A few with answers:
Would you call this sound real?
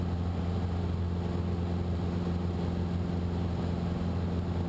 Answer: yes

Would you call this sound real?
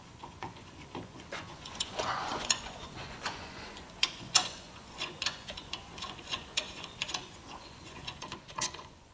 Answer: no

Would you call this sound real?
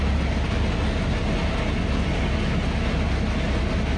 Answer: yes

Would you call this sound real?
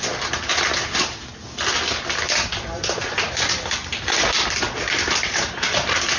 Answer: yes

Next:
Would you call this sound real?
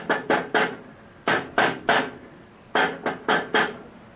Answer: yes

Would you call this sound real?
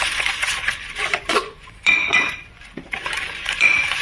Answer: no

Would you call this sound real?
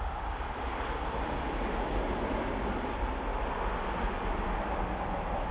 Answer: yes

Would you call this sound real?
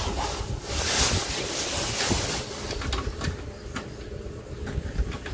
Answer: yes